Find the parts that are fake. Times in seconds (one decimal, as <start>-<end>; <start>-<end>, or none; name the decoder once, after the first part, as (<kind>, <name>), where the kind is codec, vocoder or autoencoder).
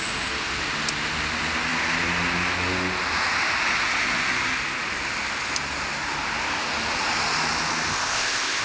7.9-8.6 (codec, ZipCodec)